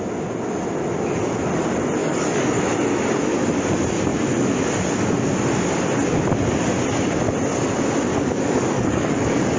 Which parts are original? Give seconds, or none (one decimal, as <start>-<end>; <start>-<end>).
0.0-2.0; 2.6-8.1